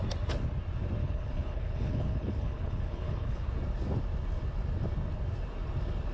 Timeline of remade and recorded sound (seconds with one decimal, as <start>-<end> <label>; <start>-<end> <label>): 0.0-1.0 recorded; 1.0-3.5 remade; 3.5-6.1 recorded